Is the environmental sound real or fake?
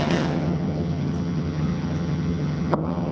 fake